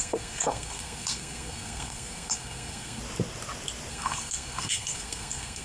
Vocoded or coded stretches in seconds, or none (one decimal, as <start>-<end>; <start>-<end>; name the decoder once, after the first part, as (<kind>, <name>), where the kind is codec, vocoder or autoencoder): 0.0-3.0 (codec, SNAC); 3.9-5.6